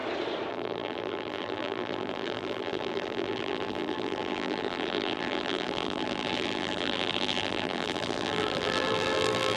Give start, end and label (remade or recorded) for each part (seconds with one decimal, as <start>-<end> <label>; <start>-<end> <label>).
0.0-0.5 recorded; 0.5-9.6 remade